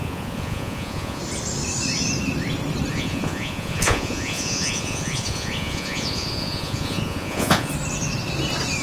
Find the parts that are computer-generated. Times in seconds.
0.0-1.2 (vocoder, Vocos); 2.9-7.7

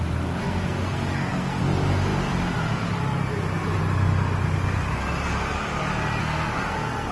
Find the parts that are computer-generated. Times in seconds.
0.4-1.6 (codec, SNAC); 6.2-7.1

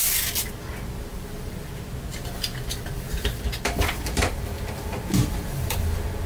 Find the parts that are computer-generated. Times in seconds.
1.1-1.7 (vocoder, BigVGAN v2); 2.1-6.3

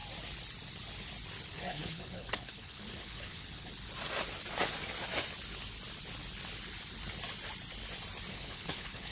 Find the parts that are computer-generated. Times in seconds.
1.5-3.7 (codec, HILCodec); 8.3-9.1